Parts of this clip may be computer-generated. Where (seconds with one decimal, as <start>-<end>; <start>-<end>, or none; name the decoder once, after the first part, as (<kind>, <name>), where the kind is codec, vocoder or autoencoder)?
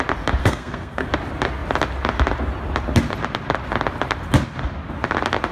0.4-1.1 (codec, SNAC)